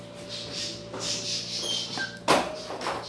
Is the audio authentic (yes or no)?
yes